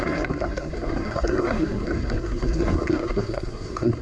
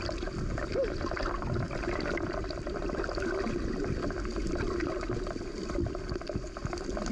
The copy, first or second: first